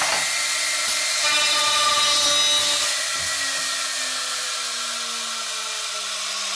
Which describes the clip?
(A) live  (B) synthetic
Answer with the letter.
A